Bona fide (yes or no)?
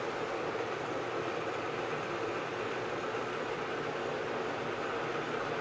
yes